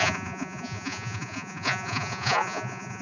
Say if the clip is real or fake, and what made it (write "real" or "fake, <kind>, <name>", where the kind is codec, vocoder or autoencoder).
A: fake, vocoder, Vocos